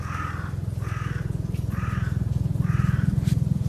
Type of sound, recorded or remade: remade